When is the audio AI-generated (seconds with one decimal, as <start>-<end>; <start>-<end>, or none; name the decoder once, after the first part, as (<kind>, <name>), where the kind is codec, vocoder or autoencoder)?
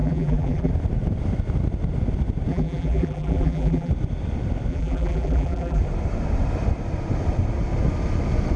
0.0-0.7 (vocoder, BigVGAN v2); 2.5-3.9; 4.7-5.8